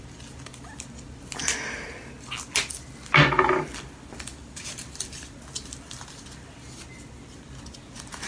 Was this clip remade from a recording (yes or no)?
no